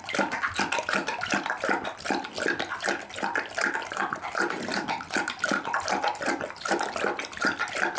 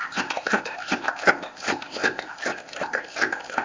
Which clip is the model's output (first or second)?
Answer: second